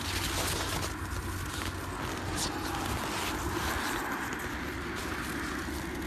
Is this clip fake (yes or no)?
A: no